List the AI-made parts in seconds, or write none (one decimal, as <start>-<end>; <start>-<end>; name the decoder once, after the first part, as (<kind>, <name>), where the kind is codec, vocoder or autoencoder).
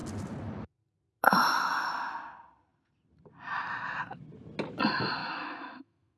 5.2-6.2 (autoencoder, DAC-VAE)